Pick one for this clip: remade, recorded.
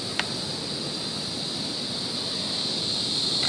recorded